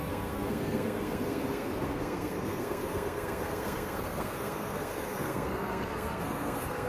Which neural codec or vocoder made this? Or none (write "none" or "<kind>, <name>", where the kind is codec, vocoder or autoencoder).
codec, SNAC